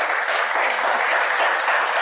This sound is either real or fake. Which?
real